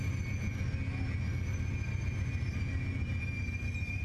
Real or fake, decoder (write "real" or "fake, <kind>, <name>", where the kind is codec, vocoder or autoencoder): real